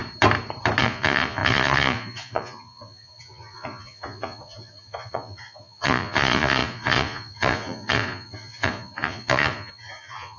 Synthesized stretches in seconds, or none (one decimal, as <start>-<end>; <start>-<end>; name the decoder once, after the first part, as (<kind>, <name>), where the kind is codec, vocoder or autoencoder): 0.8-10.4 (vocoder, Vocos)